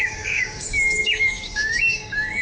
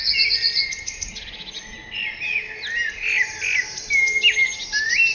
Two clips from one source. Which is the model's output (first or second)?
first